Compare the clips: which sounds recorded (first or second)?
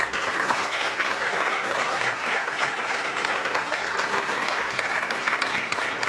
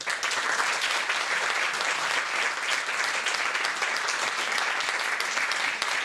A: second